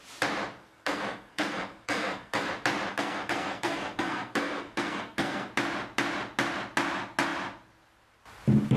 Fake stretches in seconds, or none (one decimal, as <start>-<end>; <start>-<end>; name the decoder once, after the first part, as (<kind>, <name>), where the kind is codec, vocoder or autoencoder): 0.6-2.5 (codec, SNAC); 2.9-5.5